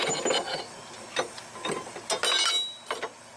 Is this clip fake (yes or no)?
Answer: no